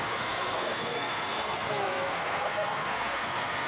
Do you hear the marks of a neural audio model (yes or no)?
yes